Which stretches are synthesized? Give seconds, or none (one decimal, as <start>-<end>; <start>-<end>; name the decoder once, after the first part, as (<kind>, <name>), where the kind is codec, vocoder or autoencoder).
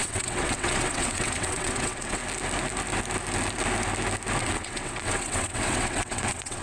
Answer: 0.0-2.2 (vocoder, WaveNeXt); 4.4-6.6